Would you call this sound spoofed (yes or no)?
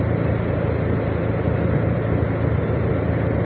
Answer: no